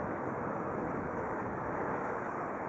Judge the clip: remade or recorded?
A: remade